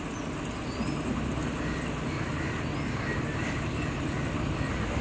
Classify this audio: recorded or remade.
recorded